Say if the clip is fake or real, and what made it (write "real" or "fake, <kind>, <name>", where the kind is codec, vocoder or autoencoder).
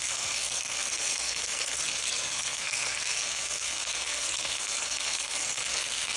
fake, codec, SNAC